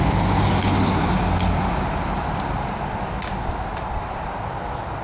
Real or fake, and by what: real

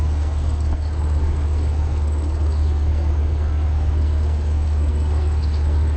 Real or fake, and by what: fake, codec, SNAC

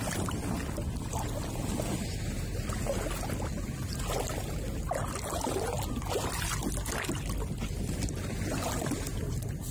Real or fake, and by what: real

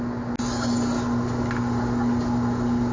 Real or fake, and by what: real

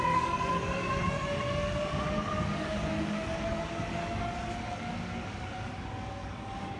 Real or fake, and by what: fake, codec, DAC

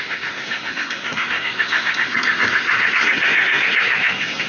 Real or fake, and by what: fake, codec, SNAC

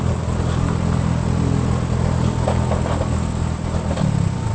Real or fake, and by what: real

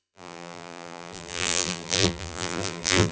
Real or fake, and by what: fake, vocoder, BigVGAN v2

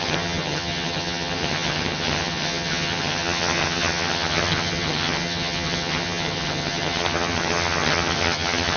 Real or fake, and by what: fake, vocoder, HiFi-GAN